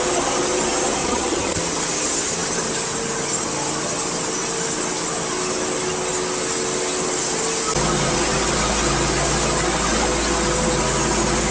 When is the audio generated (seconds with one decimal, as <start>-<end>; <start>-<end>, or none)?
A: 1.0-1.6